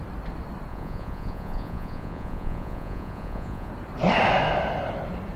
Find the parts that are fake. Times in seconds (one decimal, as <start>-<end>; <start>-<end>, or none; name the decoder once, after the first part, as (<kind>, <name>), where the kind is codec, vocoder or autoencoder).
0.7-3.7 (vocoder, Vocos)